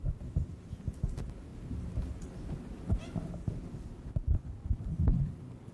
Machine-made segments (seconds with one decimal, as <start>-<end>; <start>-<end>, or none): none